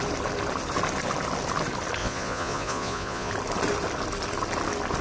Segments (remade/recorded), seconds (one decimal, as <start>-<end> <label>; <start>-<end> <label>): 0.0-2.0 recorded; 2.0-3.3 remade; 3.3-5.0 recorded